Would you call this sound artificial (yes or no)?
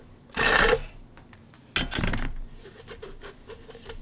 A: no